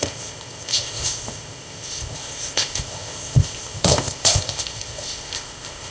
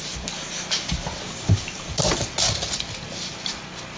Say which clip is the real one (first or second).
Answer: second